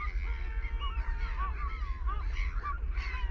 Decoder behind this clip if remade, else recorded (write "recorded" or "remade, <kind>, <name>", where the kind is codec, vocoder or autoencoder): recorded